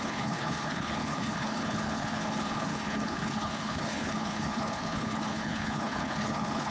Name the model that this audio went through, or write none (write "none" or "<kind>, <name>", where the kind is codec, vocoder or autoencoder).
codec, HILCodec